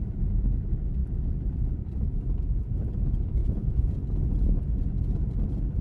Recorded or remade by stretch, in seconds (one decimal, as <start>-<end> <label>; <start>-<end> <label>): 0.0-3.4 recorded; 3.4-3.9 remade; 3.9-5.8 recorded

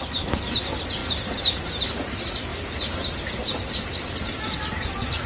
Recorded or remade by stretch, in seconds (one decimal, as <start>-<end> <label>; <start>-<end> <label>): 0.0-5.3 recorded

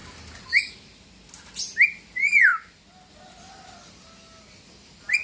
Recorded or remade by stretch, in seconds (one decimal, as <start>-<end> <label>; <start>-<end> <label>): 0.0-5.2 recorded